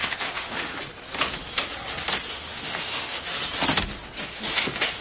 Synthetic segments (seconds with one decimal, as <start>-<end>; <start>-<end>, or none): 0.0-0.7; 2.3-3.3; 4.2-5.0